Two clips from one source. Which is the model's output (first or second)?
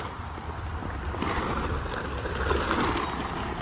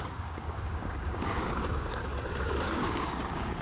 second